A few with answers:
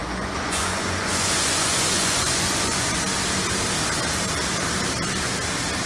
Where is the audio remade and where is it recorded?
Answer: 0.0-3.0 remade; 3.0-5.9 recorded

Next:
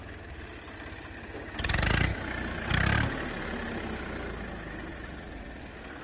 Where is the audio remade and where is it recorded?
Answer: 0.0-4.9 recorded; 4.9-5.6 remade; 5.6-6.0 recorded